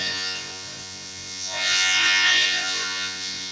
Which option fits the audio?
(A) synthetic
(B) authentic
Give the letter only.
A